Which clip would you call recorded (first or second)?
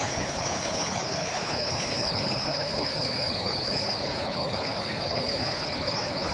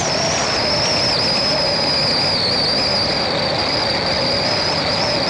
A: second